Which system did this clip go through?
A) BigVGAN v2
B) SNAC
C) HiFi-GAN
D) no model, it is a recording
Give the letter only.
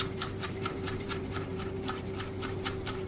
A